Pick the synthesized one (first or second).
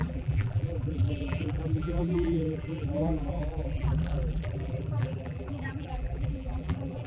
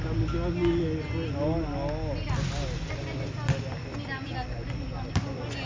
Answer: first